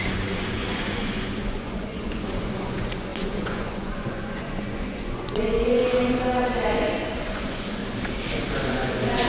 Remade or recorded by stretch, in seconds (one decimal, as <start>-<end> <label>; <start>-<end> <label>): 0.0-5.8 remade; 5.8-6.7 recorded; 6.7-7.8 remade; 7.8-8.7 recorded; 8.7-9.3 remade